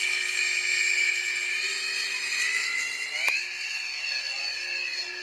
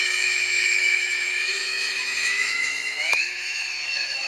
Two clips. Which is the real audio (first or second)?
first